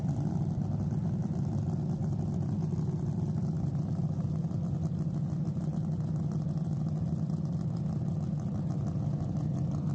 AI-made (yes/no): no